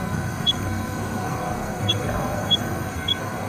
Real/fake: fake